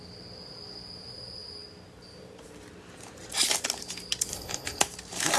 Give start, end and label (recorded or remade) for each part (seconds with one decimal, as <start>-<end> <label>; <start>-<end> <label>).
0.0-4.3 recorded; 4.3-4.8 remade; 4.8-5.4 recorded